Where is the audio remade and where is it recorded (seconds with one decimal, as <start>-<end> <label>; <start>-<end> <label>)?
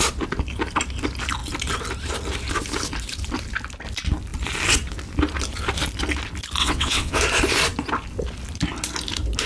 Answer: 0.0-6.6 recorded; 6.6-7.2 remade; 7.2-9.5 recorded